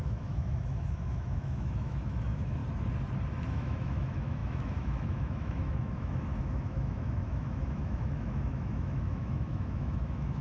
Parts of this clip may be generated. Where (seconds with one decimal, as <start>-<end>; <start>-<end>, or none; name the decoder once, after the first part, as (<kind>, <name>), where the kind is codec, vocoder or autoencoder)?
0.0-2.6 (autoencoder, DAC-VAE); 3.5-10.4